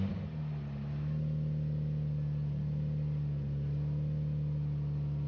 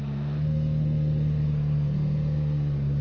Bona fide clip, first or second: first